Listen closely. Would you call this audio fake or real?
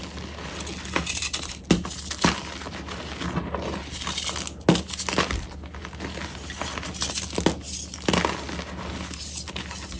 real